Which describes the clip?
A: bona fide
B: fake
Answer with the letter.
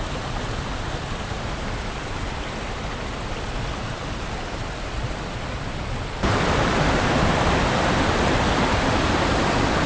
A